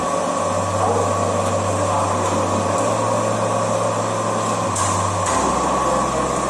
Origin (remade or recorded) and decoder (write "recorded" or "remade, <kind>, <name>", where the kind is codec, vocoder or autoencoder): recorded